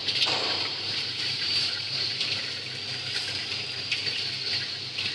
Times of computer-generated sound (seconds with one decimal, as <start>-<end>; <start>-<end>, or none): 0.0-2.4; 3.2-4.3